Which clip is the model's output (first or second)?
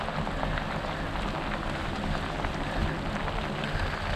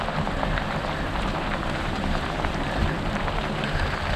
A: second